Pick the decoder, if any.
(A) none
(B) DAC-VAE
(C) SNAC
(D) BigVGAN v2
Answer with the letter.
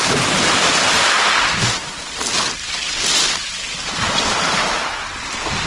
A